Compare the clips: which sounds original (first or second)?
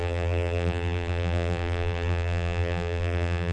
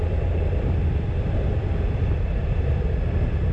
second